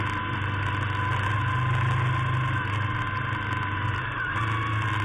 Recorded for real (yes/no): yes